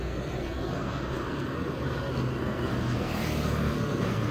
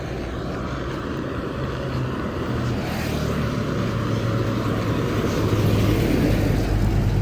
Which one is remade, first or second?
first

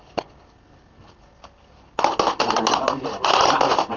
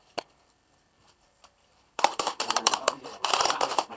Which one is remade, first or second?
second